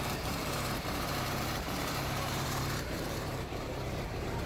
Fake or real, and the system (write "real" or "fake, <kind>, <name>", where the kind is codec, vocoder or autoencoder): fake, vocoder, BigVGAN v2